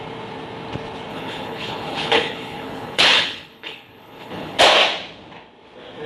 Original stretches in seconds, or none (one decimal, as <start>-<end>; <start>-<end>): 0.0-1.1; 4.6-6.1